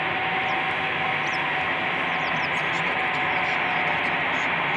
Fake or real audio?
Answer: real